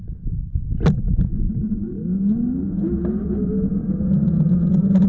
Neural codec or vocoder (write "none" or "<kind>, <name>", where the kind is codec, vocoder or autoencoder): none